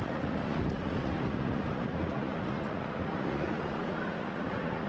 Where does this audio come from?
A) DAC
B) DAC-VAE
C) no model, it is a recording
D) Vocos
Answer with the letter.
D